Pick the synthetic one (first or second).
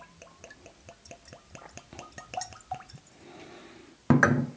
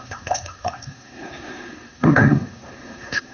second